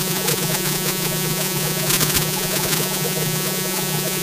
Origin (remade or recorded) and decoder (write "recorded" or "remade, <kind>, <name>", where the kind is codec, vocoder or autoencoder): remade, vocoder, Vocos